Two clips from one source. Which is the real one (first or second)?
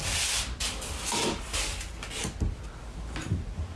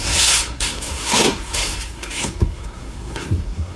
first